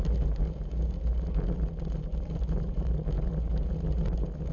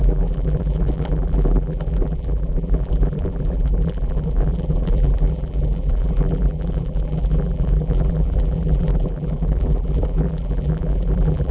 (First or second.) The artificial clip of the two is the second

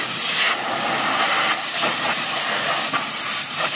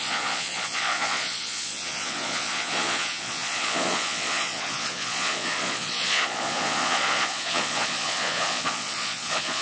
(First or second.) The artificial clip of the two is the second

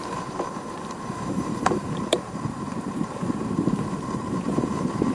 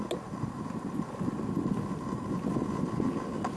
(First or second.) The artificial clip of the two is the first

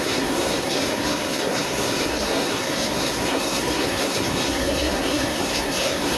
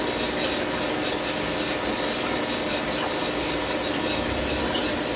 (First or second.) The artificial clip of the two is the first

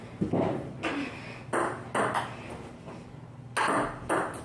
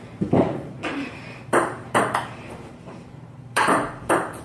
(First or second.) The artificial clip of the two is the second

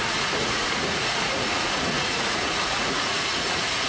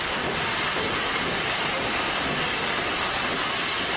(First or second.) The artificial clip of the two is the first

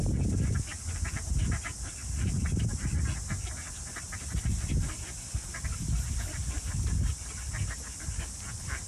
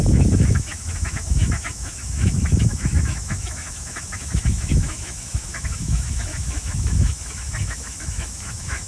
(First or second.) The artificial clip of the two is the second